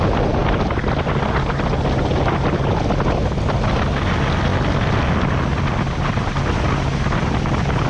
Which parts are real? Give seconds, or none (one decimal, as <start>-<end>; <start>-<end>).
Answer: 0.0-7.9